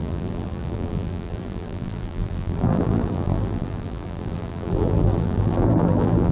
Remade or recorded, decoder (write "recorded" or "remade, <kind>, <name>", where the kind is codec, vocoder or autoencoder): remade, vocoder, BigVGAN v2